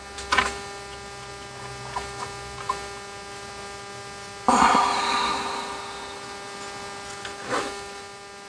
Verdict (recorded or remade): recorded